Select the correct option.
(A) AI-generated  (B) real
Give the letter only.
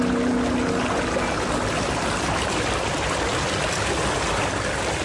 B